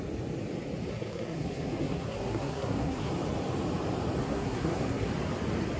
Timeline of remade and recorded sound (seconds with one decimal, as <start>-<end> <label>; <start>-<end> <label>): 0.0-0.9 recorded; 0.9-3.1 remade; 3.1-4.2 recorded; 4.2-5.1 remade; 5.1-5.8 recorded